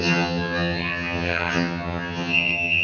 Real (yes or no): no